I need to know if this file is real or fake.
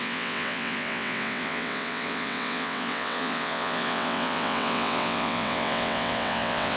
fake